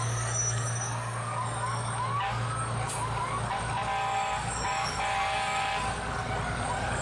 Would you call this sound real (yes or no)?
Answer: no